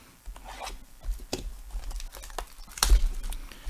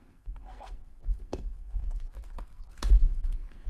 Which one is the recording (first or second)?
first